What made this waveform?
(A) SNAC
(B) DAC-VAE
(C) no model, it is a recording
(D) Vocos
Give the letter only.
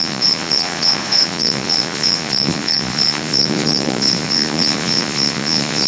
D